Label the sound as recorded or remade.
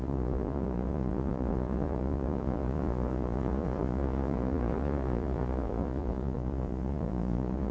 remade